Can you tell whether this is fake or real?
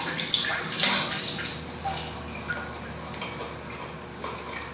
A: real